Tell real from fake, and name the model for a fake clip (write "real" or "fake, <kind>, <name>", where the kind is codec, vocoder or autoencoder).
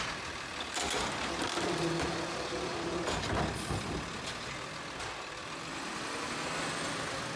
real